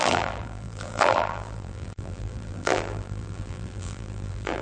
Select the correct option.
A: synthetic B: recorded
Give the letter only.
A